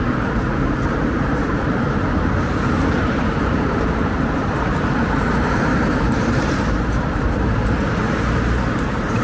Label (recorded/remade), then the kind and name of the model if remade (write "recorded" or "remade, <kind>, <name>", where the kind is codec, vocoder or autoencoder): remade, vocoder, BigVGAN v2